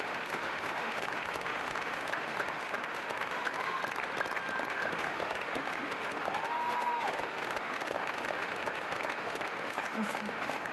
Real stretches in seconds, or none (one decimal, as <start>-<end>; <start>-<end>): 3.8-4.7